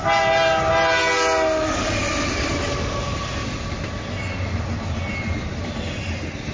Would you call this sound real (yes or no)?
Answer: yes